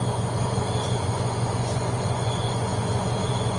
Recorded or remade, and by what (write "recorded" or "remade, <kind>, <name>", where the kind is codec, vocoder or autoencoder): remade, vocoder, Vocos